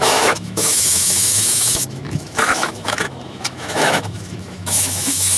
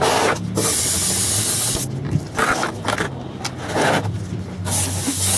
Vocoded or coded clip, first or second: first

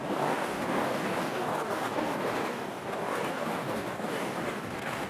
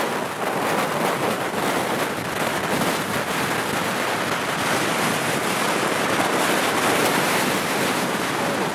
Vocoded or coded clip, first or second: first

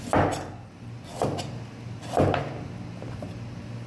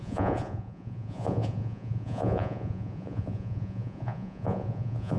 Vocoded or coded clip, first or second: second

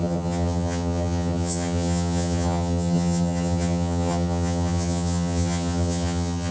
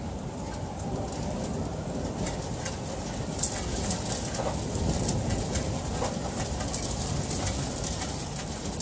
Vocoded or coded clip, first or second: first